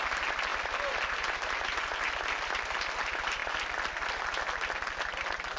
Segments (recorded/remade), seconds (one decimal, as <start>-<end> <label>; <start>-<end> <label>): 0.0-5.6 recorded